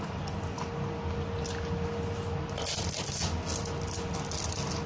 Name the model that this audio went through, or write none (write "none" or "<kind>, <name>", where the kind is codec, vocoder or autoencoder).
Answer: none